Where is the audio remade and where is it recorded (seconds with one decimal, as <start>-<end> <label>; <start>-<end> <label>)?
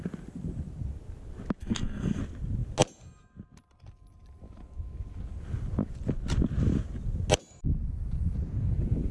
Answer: 0.0-1.6 recorded; 1.6-2.2 remade; 2.2-9.1 recorded